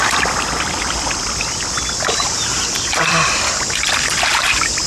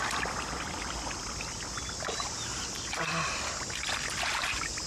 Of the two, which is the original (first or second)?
second